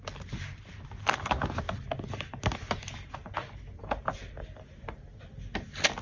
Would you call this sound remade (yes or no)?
no